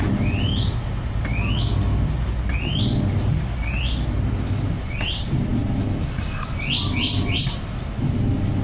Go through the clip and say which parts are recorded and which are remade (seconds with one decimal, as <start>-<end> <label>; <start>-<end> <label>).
0.0-0.5 remade; 0.5-3.1 recorded; 3.1-8.6 remade